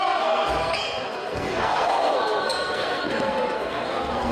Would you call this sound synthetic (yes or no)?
yes